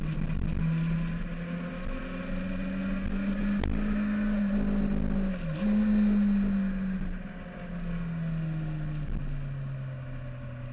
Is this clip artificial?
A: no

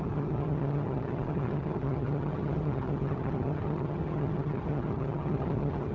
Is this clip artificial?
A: yes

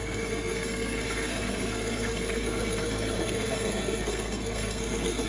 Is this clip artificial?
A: yes